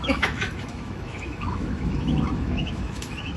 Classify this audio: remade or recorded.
remade